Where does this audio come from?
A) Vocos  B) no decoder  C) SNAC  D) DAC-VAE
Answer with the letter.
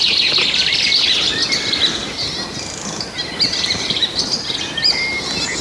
B